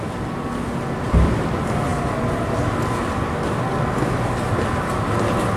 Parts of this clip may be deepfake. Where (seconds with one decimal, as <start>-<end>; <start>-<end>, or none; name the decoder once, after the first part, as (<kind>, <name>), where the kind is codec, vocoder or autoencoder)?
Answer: none